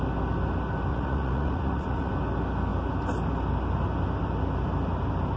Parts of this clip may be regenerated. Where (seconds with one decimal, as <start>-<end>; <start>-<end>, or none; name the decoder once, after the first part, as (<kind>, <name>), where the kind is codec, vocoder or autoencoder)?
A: 0.9-2.1 (vocoder, Vocos)

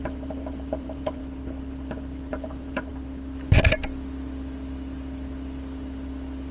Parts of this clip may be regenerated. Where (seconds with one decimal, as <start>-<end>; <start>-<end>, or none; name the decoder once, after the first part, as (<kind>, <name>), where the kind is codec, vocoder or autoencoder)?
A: 0.0-1.2 (vocoder, BigVGAN v2); 2.3-2.9